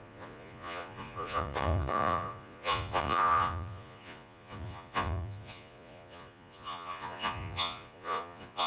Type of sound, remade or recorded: remade